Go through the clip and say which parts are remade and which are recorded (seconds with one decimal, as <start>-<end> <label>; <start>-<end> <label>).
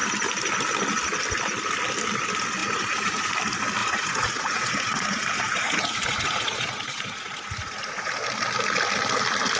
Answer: 0.0-2.6 recorded; 2.6-3.3 remade; 3.3-3.8 recorded; 3.8-8.1 remade; 8.1-9.6 recorded